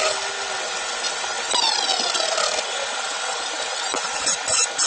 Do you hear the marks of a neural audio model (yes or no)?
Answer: no